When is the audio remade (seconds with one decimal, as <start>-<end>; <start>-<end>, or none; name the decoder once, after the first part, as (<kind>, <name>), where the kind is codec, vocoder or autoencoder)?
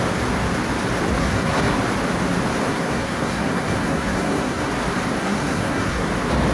1.2-1.8 (codec, SNAC); 2.6-4.7; 5.2-6.1